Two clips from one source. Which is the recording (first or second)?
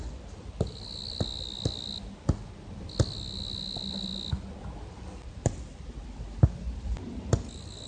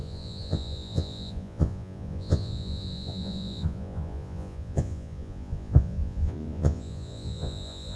first